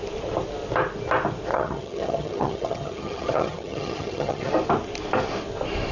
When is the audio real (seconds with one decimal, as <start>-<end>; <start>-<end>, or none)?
0.0-1.5; 4.5-5.9